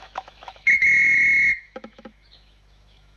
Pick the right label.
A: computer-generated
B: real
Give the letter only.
A